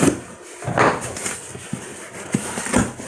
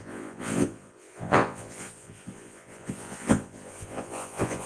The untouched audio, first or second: first